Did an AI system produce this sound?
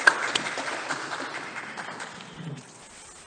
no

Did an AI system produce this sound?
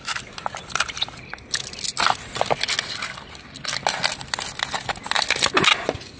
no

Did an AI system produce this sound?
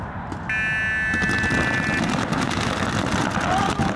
no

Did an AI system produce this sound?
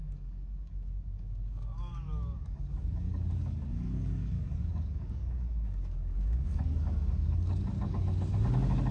yes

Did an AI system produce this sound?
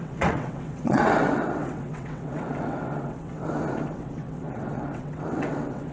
yes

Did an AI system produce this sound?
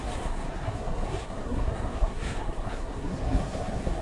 yes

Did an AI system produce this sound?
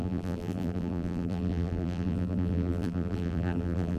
yes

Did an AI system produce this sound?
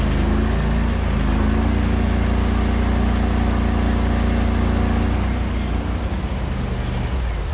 no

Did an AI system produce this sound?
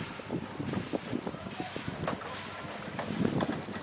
yes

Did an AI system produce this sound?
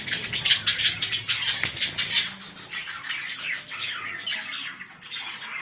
no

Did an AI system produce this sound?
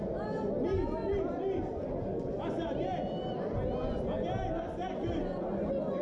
no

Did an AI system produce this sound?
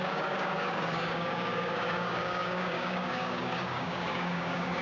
yes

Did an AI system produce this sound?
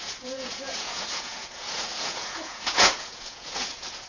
yes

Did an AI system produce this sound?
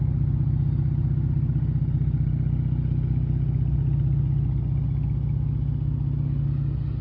no